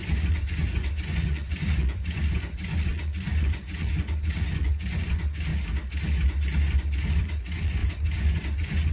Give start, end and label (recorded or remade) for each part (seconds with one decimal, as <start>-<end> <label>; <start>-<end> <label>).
0.0-5.5 remade; 5.5-7.1 recorded; 7.1-8.9 remade